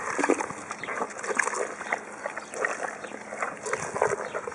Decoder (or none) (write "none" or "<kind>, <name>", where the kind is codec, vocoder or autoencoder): none